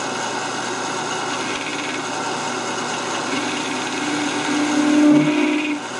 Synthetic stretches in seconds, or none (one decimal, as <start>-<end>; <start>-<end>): none